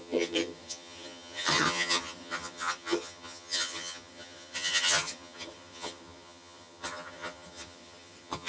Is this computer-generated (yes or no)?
yes